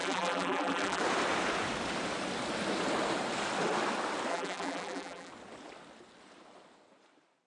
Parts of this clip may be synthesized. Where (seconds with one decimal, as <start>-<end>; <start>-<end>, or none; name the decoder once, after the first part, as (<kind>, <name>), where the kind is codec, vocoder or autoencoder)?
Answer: 0.0-1.0 (vocoder, BigVGAN v2); 4.3-5.3